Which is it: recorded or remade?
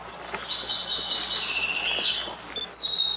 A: recorded